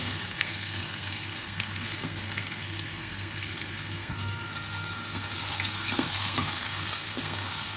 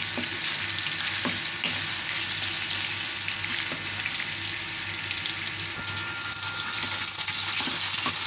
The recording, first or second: second